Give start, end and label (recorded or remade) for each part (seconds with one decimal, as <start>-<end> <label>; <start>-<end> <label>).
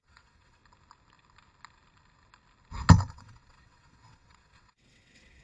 0.0-0.6 remade; 0.6-3.1 recorded; 3.1-5.4 remade